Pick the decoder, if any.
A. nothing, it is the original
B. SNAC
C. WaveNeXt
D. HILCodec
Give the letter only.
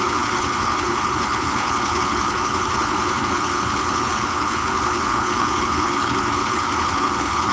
D